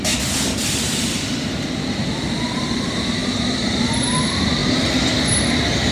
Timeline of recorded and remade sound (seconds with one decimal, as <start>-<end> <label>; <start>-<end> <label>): 0.0-3.2 recorded; 3.2-4.1 remade; 4.1-4.6 recorded; 4.6-5.4 remade; 5.4-5.9 recorded